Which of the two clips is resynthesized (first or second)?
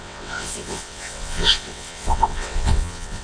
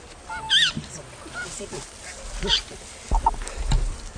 first